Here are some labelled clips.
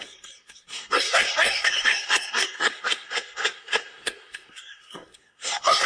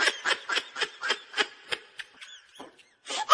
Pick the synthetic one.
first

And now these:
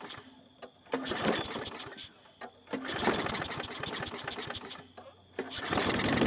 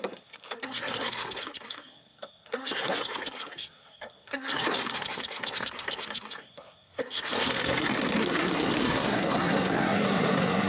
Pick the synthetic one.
second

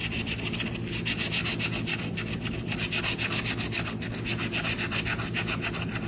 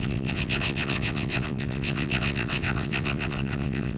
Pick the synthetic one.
second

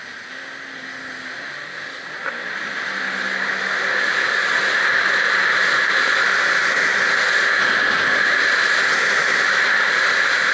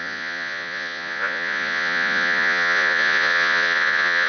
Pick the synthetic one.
second